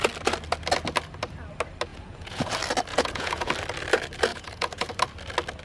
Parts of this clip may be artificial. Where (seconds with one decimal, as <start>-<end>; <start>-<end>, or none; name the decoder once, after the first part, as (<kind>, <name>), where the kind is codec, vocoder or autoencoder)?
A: 1.9-2.5 (vocoder, Vocos); 2.9-3.5; 4.3-4.9